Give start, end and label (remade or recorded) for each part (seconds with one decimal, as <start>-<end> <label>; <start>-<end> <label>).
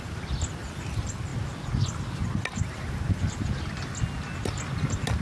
0.0-5.2 recorded